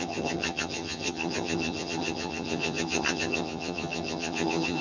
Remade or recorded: remade